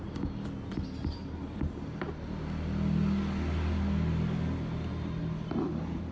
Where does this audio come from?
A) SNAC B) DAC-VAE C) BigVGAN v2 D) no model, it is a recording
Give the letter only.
D